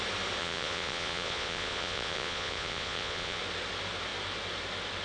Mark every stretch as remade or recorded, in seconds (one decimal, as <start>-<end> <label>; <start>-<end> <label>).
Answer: 0.0-0.4 recorded; 0.4-3.4 remade; 3.4-5.0 recorded